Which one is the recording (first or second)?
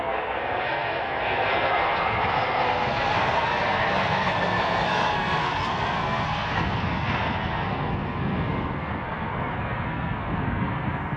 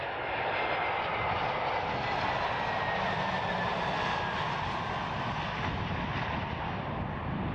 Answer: second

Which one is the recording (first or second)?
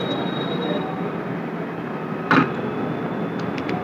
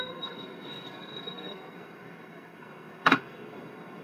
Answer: first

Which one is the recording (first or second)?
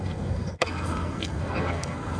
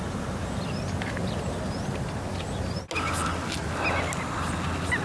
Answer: second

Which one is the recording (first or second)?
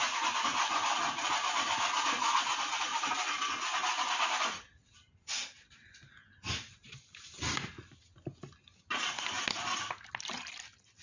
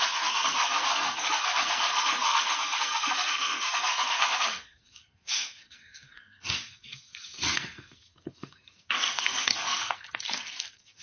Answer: first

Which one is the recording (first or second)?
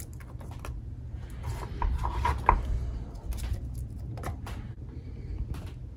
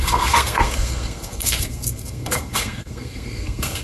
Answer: first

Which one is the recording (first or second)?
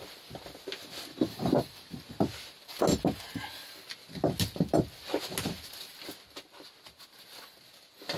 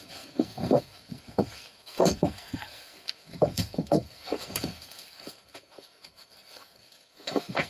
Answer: first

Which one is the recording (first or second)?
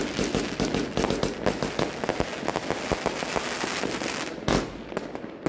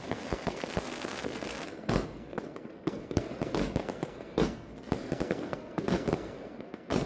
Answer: first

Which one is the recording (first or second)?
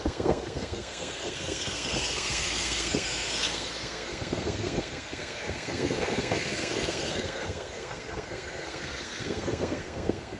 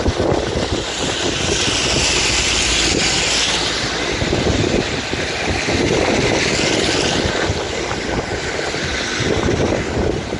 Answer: second